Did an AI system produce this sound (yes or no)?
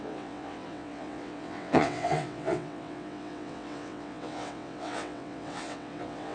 yes